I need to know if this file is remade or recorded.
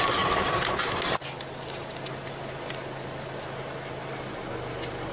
recorded